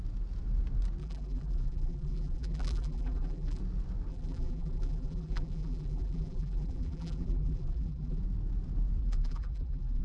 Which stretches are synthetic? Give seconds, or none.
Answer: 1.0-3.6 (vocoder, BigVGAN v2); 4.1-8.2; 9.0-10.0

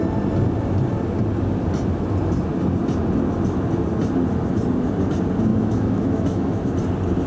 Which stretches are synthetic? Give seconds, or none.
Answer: 5.5-6.6 (autoencoder, DAC-VAE)

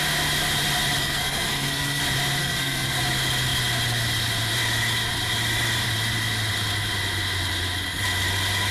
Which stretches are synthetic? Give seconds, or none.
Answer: 1.0-2.0 (codec, SNAC); 2.4-3.0

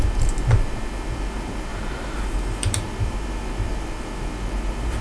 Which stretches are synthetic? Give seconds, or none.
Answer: 0.0-5.0 (vocoder, BigVGAN v2)